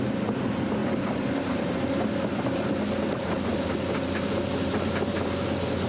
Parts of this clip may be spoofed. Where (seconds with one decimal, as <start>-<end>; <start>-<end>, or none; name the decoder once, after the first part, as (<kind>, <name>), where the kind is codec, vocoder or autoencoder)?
none